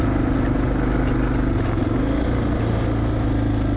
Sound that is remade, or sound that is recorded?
recorded